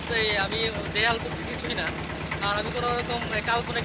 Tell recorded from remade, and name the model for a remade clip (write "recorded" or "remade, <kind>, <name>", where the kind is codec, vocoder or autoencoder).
recorded